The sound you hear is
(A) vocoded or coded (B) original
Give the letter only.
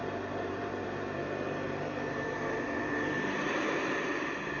A